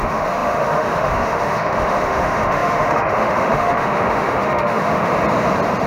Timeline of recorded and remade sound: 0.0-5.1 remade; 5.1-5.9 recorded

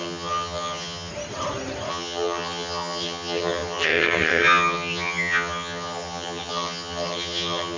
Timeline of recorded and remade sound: 0.0-1.1 remade; 1.1-1.9 recorded; 1.9-7.8 remade

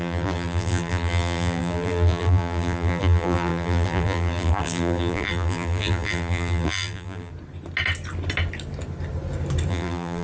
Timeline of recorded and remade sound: 0.0-7.3 remade; 7.3-9.7 recorded; 9.7-10.2 remade

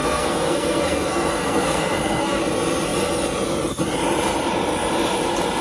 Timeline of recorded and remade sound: 0.0-2.4 remade; 2.4-5.6 recorded